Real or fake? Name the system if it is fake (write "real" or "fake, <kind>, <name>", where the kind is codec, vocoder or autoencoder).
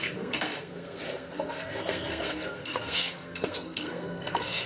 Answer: fake, codec, SNAC